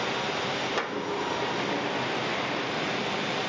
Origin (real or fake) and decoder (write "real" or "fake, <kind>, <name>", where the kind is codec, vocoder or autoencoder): real